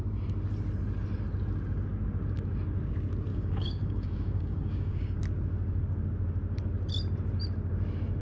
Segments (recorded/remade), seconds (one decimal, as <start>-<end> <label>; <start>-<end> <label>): 0.0-3.3 recorded; 3.3-5.2 remade; 5.2-8.2 recorded